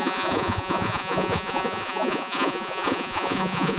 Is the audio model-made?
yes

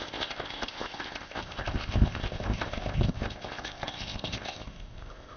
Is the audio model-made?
yes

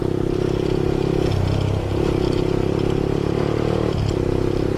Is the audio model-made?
no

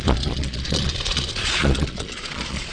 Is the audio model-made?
yes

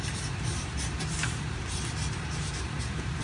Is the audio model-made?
yes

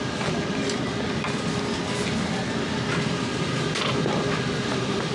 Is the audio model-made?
no